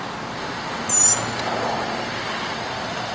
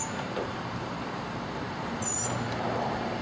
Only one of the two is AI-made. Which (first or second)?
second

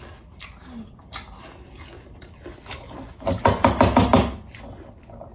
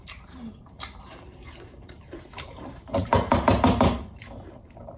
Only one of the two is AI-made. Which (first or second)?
second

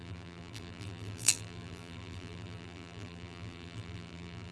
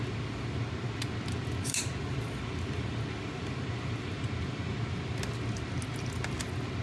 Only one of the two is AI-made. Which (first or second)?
first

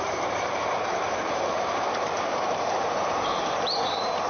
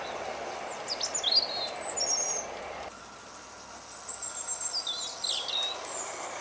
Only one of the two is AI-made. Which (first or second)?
first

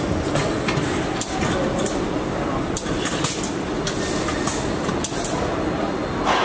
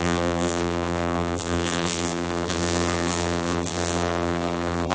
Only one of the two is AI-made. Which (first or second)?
second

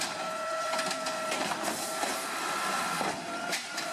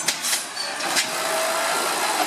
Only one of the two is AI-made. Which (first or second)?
first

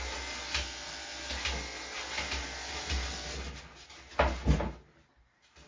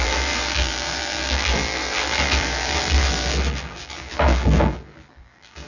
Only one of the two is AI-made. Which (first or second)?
second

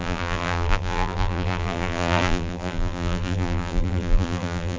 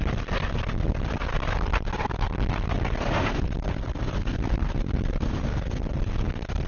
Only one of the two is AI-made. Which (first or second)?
first